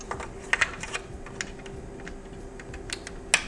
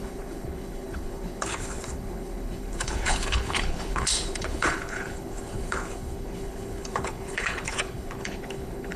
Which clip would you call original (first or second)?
first